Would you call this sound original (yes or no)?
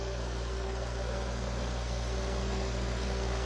no